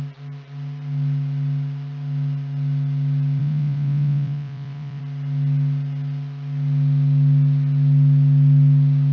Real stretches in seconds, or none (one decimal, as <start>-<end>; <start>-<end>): 0.0-3.4; 5.0-9.1